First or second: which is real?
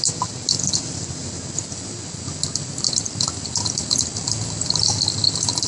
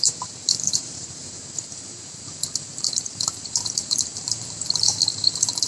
first